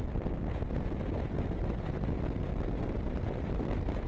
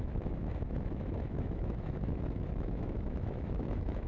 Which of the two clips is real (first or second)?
first